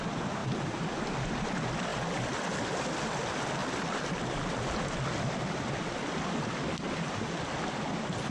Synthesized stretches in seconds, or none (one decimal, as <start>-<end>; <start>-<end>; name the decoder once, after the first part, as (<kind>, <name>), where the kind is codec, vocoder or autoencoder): none